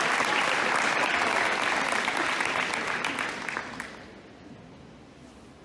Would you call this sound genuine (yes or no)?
yes